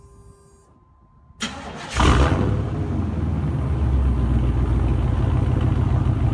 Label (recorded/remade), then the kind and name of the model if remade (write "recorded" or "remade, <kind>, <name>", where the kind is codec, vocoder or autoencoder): recorded